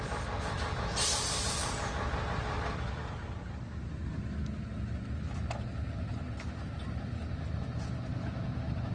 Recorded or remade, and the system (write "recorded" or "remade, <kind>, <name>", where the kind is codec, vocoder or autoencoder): recorded